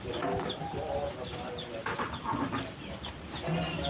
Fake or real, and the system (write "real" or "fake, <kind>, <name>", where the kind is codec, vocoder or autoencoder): real